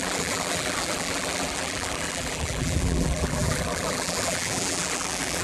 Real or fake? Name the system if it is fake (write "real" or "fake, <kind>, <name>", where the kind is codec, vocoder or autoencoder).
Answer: fake, vocoder, BigVGAN v2